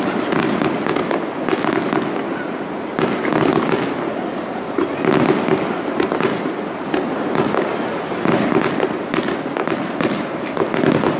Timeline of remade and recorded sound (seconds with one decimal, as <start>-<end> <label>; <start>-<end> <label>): 0.0-11.2 recorded